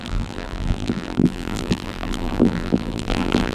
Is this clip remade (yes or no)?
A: yes